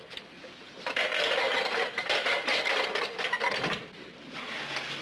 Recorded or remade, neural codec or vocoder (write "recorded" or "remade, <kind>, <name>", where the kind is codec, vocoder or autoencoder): recorded